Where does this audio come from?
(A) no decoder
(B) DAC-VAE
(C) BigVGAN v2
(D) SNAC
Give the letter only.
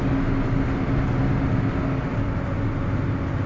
A